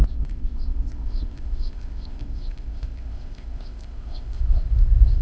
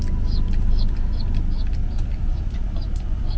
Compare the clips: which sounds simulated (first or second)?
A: first